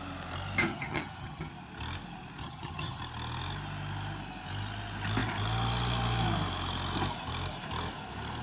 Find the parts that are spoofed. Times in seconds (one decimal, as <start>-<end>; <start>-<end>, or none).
0.7-1.5; 2.4-3.0